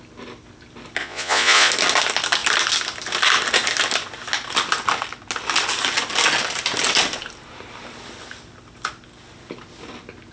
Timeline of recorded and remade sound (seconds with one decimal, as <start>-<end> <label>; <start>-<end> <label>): 0.0-1.0 recorded; 1.0-1.7 remade; 1.7-10.3 recorded